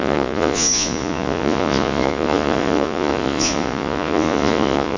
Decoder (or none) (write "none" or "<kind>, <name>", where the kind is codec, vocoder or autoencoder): vocoder, Vocos